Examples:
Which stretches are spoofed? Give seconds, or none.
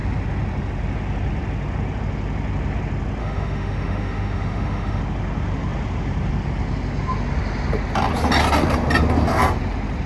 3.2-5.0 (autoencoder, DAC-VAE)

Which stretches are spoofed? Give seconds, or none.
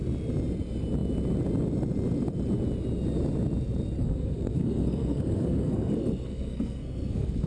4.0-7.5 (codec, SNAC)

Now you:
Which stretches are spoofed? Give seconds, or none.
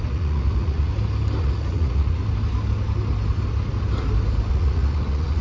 0.0-0.9 (vocoder, Vocos); 1.4-2.2; 4.5-5.4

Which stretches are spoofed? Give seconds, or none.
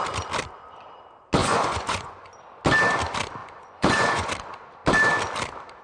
1.4-2.3 (vocoder, Vocos); 3.4-4.3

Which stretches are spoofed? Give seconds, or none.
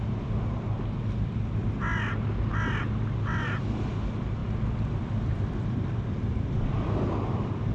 4.4-7.7 (vocoder, BigVGAN v2)